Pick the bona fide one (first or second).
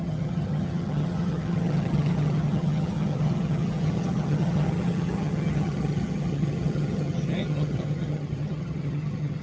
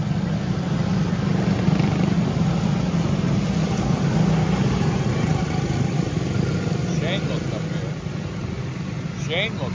second